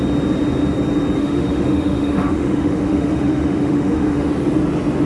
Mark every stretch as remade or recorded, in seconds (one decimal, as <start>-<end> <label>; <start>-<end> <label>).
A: 0.0-1.2 recorded; 1.2-4.3 remade; 4.3-5.1 recorded